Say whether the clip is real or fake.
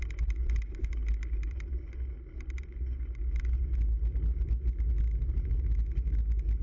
real